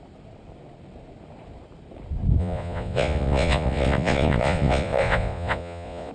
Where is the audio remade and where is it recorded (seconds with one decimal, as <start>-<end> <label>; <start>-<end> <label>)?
0.0-2.4 recorded; 2.4-6.1 remade